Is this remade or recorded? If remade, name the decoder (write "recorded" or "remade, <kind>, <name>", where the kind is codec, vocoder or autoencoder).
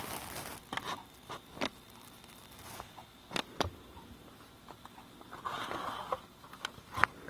recorded